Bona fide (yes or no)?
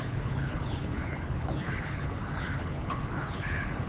no